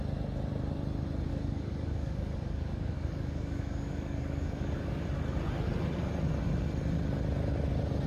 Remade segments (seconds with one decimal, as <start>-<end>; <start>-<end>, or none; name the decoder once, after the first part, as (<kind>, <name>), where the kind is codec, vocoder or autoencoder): 1.3-5.0 (codec, DAC)